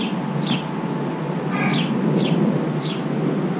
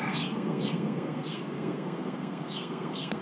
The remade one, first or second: second